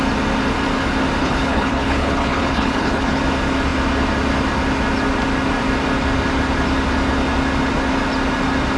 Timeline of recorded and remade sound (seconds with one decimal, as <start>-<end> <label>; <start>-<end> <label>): 0.0-1.2 recorded; 1.2-3.2 remade; 3.2-8.8 recorded